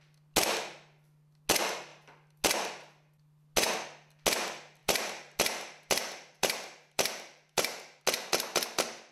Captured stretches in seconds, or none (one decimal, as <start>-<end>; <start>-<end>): 0.0-4.8; 8.0-9.1